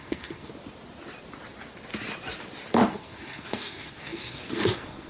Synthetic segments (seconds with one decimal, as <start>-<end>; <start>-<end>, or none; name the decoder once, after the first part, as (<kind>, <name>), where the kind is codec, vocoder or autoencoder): 0.0-0.5 (codec, SNAC); 2.9-5.1